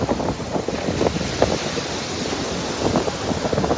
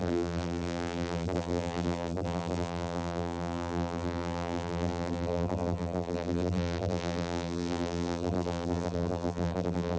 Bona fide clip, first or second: first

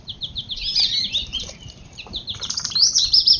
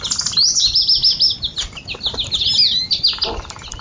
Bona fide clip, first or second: second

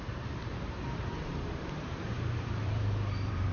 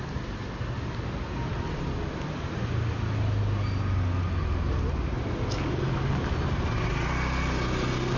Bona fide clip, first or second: second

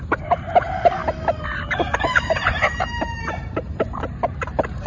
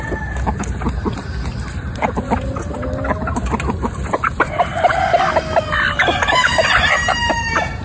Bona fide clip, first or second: second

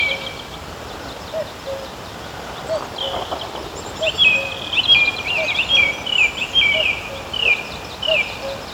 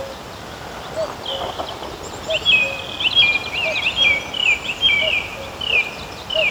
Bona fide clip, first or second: second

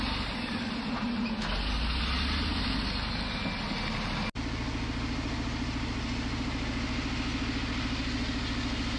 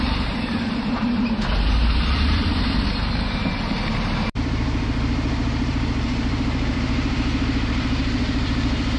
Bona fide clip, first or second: first